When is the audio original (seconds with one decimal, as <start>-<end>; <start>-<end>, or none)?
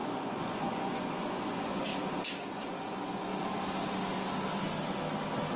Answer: 1.9-2.5; 3.3-5.6